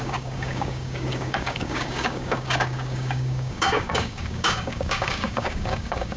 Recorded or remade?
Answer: remade